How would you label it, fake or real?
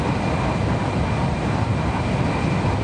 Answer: real